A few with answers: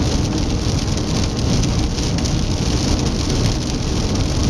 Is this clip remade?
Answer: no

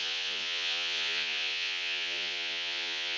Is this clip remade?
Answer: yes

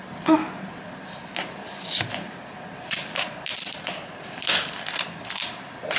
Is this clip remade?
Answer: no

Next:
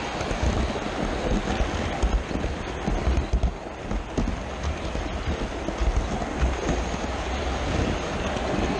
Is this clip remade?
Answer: no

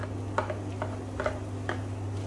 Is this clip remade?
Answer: no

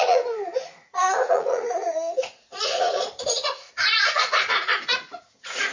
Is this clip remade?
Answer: yes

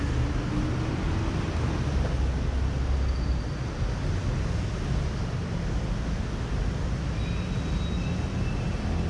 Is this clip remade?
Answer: no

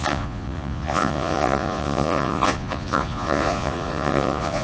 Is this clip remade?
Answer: yes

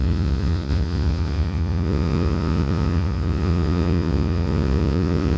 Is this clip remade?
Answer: yes